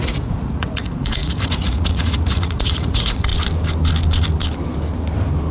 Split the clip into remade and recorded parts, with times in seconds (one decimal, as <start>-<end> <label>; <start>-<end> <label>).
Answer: 0.0-3.3 remade; 3.3-5.5 recorded